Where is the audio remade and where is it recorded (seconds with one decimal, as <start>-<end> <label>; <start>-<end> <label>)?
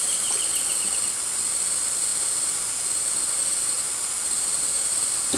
0.0-5.4 recorded